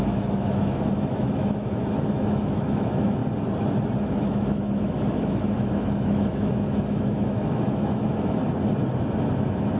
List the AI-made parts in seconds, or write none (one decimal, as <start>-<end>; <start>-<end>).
0.0-3.2; 4.2-8.4; 9.3-9.8